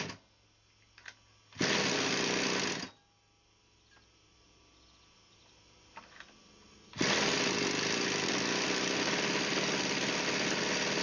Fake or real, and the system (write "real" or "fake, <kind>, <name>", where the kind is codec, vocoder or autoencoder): real